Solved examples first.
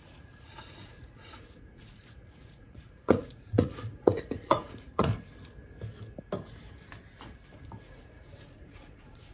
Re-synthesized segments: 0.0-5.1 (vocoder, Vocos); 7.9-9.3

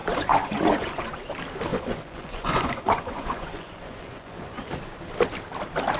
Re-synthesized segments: 0.0-1.2 (vocoder, Vocos); 1.7-4.7